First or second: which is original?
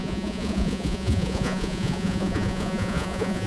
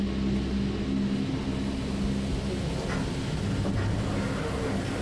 second